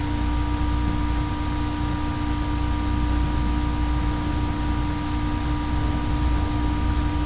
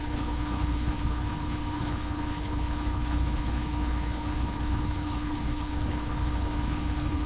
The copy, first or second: second